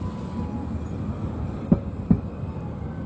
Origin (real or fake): real